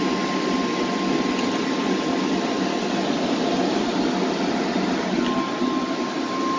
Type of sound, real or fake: real